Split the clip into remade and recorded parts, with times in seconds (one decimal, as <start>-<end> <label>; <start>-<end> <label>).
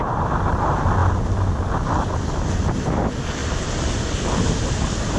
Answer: 0.0-3.4 recorded; 3.4-4.2 remade; 4.2-5.2 recorded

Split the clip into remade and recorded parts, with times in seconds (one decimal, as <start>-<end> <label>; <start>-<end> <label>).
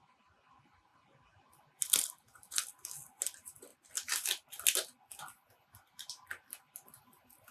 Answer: 0.0-7.5 recorded